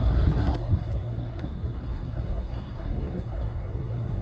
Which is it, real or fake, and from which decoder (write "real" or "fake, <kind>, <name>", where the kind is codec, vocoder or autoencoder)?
fake, codec, SNAC